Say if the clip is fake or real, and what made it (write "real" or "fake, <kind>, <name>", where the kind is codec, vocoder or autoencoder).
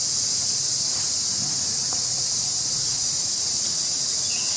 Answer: fake, vocoder, Vocos